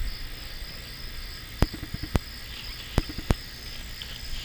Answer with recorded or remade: recorded